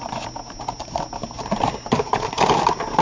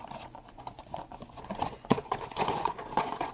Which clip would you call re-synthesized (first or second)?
second